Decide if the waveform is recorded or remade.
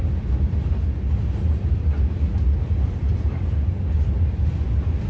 recorded